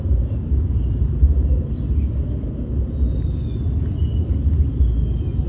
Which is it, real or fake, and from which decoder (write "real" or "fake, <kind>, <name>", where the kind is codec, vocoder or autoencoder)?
real